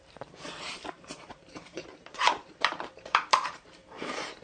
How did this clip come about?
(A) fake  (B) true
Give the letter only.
A